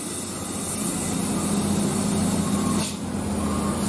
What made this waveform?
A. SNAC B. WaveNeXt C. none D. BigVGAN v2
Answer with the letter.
C